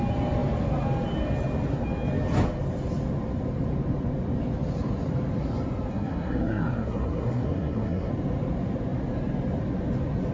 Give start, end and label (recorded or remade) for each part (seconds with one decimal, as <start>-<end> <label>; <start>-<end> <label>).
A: 0.0-5.9 recorded; 5.9-8.1 remade; 8.1-10.3 recorded